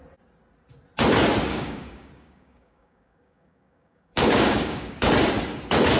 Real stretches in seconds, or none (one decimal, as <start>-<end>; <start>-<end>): 0.0-1.5; 5.1-6.0